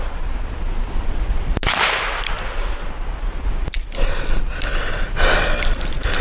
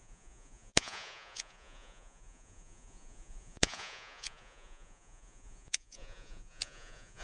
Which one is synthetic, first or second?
second